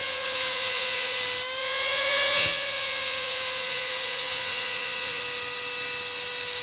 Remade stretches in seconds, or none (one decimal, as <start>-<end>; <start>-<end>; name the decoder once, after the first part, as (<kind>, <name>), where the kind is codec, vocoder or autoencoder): 0.0-1.2 (vocoder, Vocos); 1.6-5.2